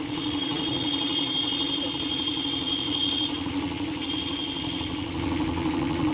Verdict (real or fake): fake